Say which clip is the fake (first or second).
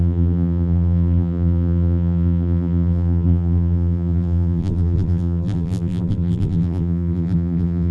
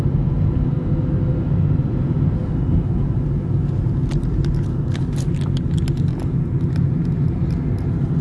first